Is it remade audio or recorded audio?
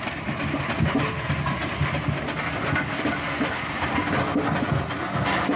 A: recorded